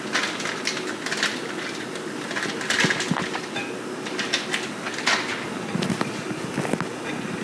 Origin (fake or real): real